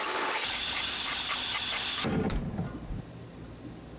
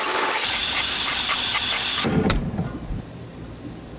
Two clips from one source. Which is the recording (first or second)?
first